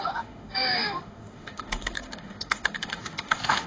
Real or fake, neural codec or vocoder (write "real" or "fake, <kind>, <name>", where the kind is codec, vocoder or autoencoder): fake, autoencoder, DAC-VAE